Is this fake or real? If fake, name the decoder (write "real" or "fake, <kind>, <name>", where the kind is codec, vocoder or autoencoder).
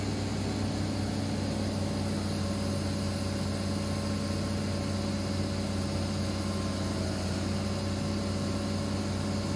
real